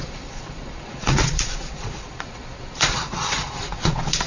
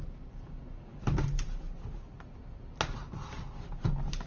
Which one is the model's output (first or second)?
first